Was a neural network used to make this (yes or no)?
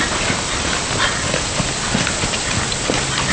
no